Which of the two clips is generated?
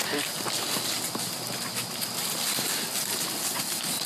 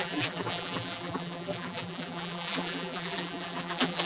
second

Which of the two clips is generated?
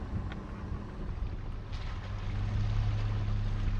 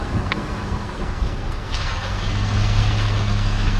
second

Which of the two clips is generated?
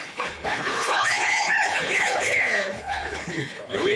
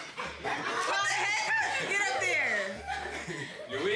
first